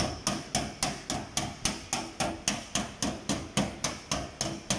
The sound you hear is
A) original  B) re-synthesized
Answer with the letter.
A